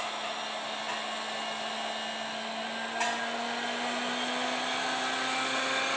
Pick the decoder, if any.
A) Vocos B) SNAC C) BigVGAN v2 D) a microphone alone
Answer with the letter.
D